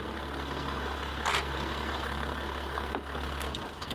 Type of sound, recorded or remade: remade